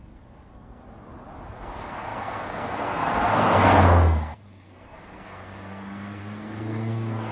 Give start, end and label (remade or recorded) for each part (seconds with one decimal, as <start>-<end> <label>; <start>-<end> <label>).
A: 0.0-0.8 remade; 0.8-1.5 recorded; 1.5-7.3 remade